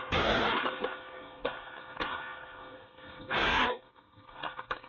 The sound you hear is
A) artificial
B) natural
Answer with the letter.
A